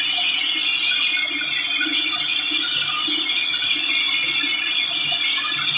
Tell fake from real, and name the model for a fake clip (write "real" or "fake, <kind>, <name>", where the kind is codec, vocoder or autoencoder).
real